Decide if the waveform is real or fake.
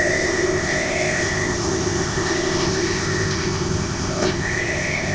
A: fake